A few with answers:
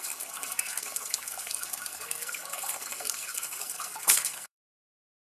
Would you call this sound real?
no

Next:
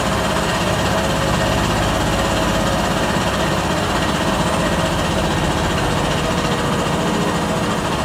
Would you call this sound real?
yes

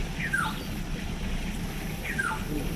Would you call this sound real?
yes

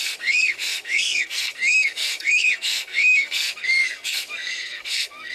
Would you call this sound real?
no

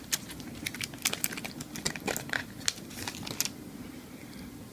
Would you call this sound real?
yes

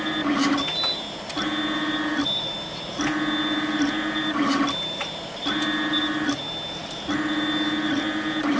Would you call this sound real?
yes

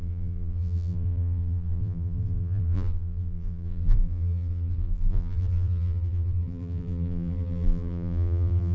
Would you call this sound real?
no